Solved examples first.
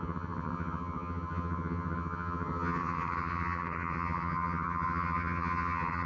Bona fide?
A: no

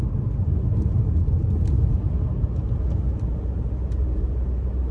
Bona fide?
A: yes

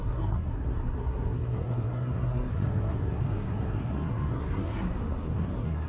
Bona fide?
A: no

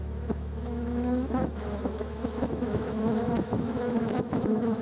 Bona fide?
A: no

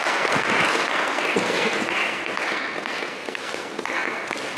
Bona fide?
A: no